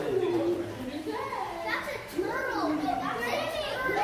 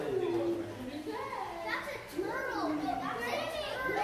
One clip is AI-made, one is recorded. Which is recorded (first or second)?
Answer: second